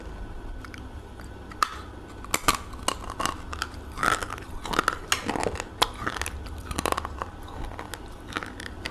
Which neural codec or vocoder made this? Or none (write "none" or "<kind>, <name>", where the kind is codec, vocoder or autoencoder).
none